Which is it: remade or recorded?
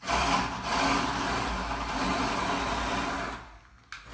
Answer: recorded